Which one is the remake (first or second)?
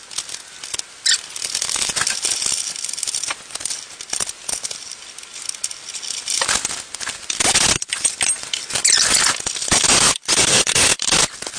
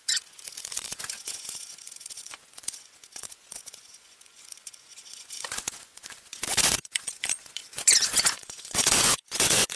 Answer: second